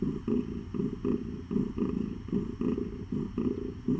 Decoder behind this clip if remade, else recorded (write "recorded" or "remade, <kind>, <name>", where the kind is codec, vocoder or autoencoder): recorded